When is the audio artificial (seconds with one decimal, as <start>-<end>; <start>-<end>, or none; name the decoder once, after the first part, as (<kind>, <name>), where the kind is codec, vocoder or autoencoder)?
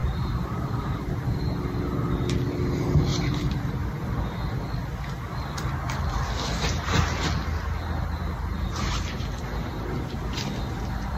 0.0-1.2 (vocoder, BigVGAN v2); 3.1-4.1